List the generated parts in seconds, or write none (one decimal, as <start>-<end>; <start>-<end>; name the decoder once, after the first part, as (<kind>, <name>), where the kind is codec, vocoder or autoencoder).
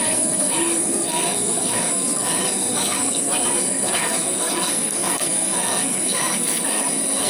0.0-7.3 (codec, SNAC)